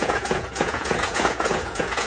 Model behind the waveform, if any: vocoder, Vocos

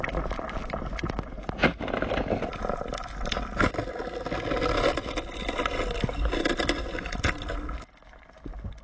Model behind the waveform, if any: none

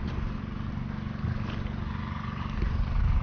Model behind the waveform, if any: none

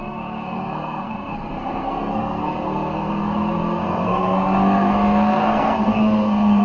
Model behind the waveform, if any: codec, SNAC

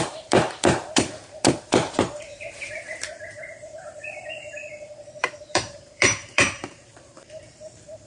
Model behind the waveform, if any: vocoder, BigVGAN v2